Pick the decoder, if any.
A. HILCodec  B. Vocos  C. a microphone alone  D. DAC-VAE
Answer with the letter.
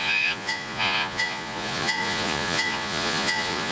B